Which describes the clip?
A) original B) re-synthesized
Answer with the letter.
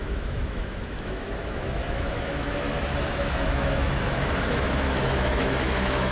B